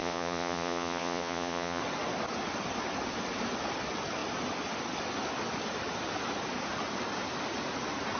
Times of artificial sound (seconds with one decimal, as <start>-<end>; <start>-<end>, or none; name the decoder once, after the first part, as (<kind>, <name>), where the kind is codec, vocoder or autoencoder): 0.0-1.8 (vocoder, Vocos)